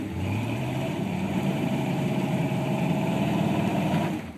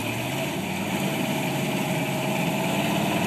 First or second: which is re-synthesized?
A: first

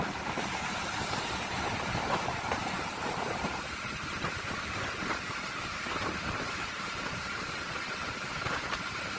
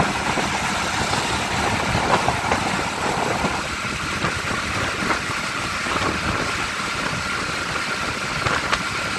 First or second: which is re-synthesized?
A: first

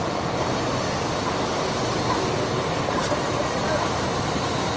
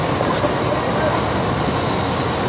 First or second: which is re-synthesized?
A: first